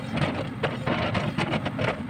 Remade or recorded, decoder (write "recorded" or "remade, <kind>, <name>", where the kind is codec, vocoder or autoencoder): recorded